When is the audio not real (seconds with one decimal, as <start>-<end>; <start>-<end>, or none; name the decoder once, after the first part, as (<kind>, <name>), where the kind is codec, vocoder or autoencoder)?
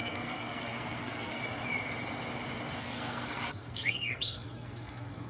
0.0-1.4 (codec, SNAC); 2.8-5.3